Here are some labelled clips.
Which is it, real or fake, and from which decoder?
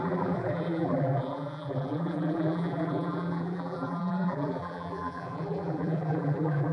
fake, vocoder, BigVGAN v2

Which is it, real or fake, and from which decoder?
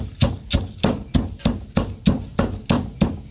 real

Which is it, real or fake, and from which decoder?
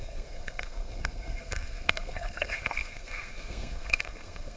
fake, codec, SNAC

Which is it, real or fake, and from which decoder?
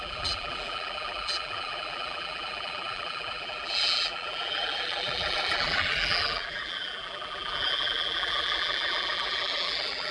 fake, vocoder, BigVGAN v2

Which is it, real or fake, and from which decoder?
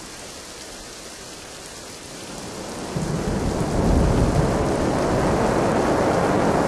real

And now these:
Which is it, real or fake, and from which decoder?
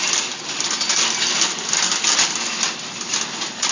real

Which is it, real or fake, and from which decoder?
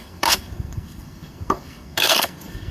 fake, codec, SNAC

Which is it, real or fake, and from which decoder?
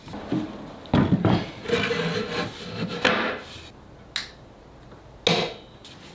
real